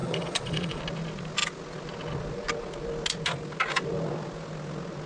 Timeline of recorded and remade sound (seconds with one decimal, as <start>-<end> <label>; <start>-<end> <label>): 0.0-0.8 remade; 0.8-5.1 recorded